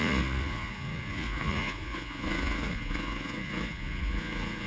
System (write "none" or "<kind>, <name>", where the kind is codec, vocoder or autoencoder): vocoder, Vocos